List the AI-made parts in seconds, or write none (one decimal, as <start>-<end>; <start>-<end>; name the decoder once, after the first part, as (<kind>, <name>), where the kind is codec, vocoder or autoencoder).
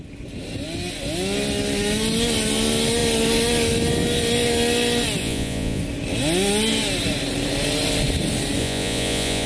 5.2-5.8 (vocoder, Vocos); 8.6-9.5